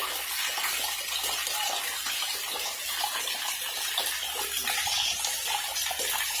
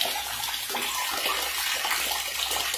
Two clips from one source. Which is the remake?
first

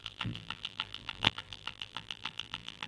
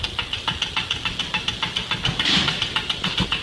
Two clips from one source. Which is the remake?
first